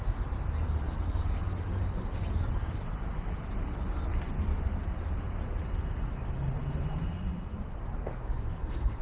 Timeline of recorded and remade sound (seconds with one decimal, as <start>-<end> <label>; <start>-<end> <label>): 0.0-8.0 recorded; 8.0-9.0 remade